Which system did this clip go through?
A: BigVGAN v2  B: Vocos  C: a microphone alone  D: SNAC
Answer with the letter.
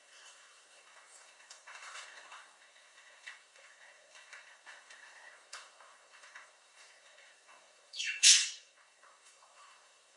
D